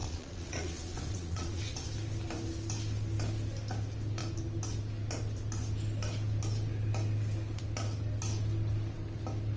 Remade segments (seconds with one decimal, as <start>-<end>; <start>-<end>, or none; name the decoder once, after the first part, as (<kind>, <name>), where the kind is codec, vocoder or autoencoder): 0.0-1.6 (vocoder, Vocos)